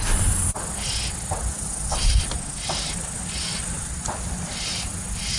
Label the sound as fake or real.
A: real